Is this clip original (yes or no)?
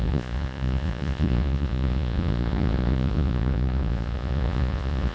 no